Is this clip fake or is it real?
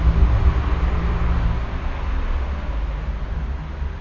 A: real